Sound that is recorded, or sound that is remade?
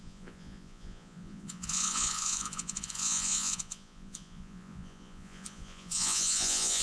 remade